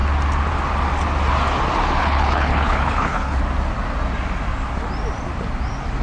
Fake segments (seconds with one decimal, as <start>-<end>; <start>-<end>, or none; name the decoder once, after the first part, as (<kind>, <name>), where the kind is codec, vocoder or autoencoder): 2.0-3.4 (codec, HILCodec)